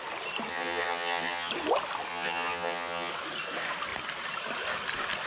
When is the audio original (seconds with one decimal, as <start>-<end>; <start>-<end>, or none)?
0.0-0.5; 1.5-2.1; 3.1-5.3